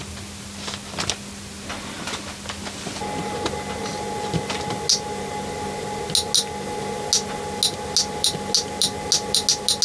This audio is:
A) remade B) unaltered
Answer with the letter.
B